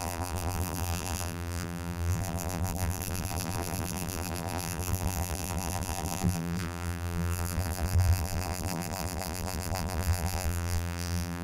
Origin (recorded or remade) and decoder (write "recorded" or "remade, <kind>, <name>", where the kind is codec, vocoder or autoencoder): remade, vocoder, BigVGAN v2